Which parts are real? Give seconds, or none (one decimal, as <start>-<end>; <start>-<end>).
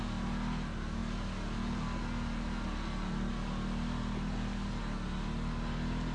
0.0-6.1